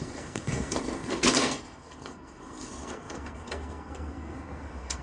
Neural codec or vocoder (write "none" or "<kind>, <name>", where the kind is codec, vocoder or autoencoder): codec, SNAC